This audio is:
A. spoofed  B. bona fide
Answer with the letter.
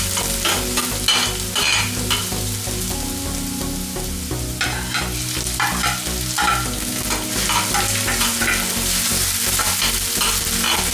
B